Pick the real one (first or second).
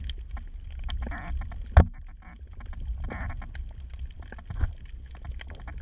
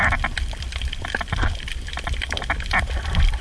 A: first